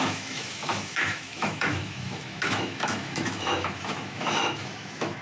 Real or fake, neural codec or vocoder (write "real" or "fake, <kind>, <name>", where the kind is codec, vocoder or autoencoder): fake, autoencoder, DAC-VAE